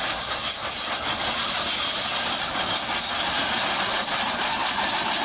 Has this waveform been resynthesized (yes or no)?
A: no